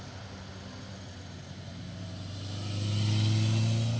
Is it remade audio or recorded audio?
recorded